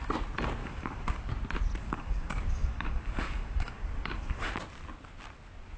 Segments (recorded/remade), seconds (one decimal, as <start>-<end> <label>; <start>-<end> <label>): 0.0-0.6 recorded; 0.6-1.3 remade; 1.3-1.8 recorded; 1.8-4.5 remade; 4.5-5.8 recorded